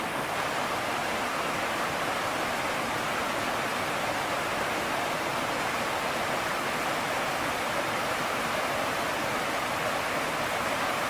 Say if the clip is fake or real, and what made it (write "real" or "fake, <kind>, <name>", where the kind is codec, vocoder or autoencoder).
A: real